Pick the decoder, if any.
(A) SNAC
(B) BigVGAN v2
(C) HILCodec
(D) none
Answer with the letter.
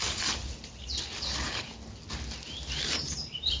D